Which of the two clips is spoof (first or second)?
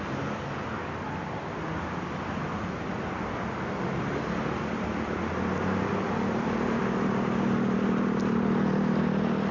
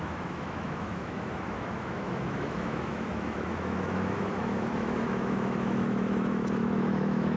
second